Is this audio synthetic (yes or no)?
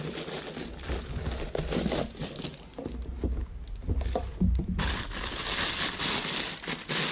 no